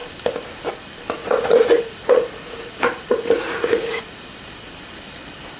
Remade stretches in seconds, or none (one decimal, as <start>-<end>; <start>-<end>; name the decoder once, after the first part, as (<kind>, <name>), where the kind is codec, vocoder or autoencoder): 1.2-4.0 (vocoder, Vocos)